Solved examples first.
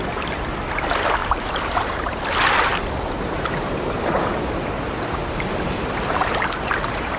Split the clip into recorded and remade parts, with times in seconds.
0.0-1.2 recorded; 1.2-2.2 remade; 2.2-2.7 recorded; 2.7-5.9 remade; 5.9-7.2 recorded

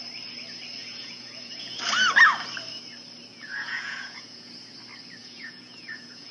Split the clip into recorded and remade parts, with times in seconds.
0.0-0.8 recorded; 0.8-1.8 remade; 1.8-3.3 recorded; 3.3-4.5 remade; 4.5-5.2 recorded; 5.2-6.3 remade